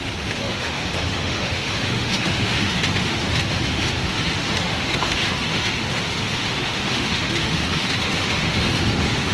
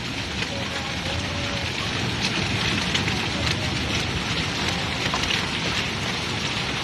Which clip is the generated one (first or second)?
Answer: first